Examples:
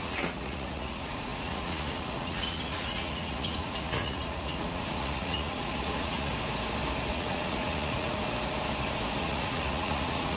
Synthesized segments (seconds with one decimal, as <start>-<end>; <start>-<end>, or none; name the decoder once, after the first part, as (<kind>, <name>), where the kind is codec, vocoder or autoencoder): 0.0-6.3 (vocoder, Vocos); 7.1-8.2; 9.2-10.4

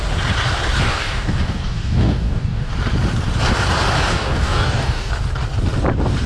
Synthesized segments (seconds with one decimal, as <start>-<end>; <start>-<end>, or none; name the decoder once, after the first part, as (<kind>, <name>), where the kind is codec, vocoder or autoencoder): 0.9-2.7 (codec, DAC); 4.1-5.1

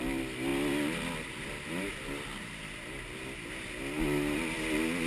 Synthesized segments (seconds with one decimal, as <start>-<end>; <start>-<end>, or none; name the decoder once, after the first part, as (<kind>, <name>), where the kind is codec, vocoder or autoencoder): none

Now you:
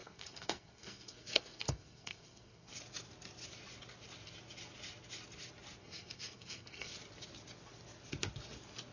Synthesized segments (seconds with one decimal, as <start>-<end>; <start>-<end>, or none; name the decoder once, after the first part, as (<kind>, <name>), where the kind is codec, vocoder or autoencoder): 0.0-2.7 (codec, SNAC); 5.8-6.9